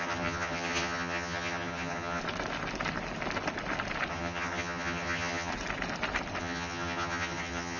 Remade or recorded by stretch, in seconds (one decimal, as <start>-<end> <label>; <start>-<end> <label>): 0.0-2.2 remade; 2.2-4.1 recorded; 4.1-5.5 remade; 5.5-6.4 recorded; 6.4-7.8 remade